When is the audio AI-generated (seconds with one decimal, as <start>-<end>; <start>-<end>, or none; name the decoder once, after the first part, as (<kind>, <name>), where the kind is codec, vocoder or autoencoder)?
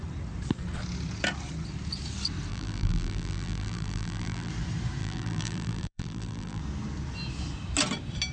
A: 2.5-4.5 (vocoder, BigVGAN v2); 5.0-6.6